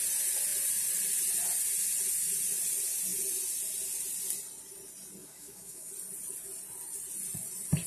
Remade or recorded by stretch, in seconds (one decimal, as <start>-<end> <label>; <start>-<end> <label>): 0.0-5.2 recorded; 5.2-5.9 remade; 5.9-7.9 recorded